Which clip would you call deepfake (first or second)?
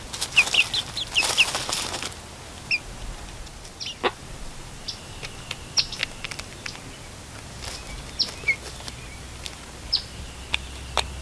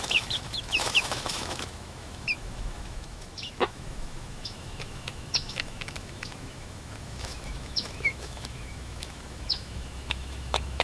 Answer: second